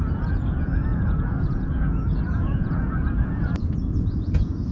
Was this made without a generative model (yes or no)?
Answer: no